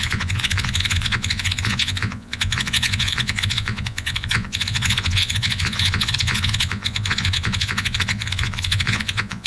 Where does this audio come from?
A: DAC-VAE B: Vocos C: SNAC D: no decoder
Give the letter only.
B